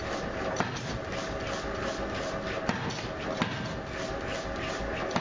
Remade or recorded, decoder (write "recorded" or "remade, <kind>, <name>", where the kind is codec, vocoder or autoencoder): recorded